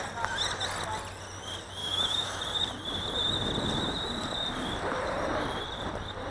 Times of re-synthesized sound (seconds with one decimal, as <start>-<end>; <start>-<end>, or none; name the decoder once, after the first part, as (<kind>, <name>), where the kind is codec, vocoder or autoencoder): 1.8-2.4 (autoencoder, DAC-VAE)